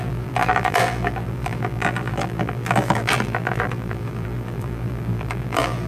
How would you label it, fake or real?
fake